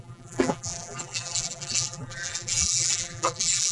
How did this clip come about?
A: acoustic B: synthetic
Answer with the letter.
B